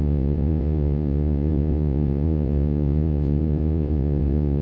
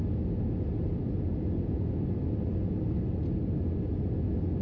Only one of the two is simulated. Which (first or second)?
first